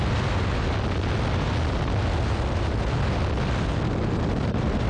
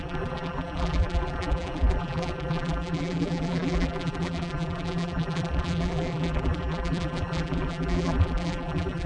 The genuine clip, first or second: first